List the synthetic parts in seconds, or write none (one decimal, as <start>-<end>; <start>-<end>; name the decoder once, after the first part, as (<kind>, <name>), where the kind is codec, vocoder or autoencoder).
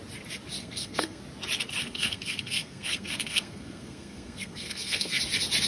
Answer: 0.6-1.2 (codec, SNAC); 1.8-5.2